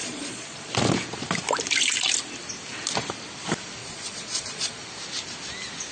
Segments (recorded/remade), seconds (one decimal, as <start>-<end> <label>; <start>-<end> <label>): 0.0-0.7 remade; 0.7-3.8 recorded; 3.8-4.8 remade; 4.8-5.9 recorded